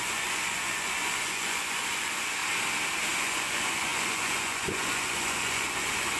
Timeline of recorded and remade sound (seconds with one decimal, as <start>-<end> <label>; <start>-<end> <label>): 0.0-2.4 remade; 2.4-3.2 recorded; 3.2-6.2 remade